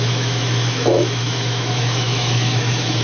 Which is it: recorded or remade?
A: remade